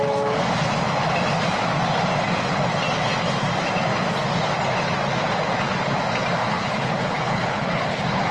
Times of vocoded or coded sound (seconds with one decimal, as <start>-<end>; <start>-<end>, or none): 6.4-8.3

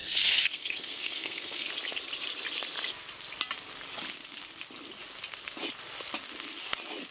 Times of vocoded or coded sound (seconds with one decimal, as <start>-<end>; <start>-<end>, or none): 0.0-1.7

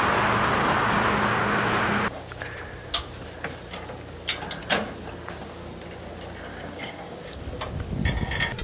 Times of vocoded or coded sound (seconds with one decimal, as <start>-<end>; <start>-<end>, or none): 6.5-7.4